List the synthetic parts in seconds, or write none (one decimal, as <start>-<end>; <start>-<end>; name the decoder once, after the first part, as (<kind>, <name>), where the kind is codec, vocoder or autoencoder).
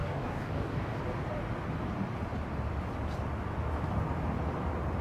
0.0-1.0 (codec, DAC)